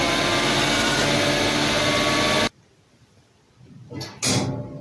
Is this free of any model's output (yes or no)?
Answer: yes